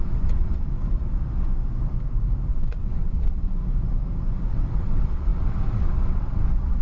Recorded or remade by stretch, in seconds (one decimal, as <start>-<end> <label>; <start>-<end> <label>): 0.0-0.7 remade; 0.7-2.5 recorded; 2.5-3.6 remade; 3.6-4.5 recorded; 4.5-6.8 remade